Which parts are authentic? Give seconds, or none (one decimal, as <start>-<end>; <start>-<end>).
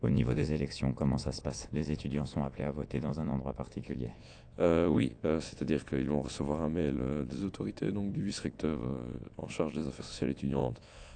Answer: 7.4-8.3